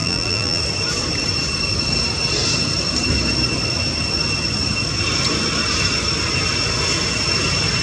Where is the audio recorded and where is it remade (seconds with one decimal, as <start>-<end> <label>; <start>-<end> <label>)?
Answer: 0.0-0.6 remade; 0.6-7.8 recorded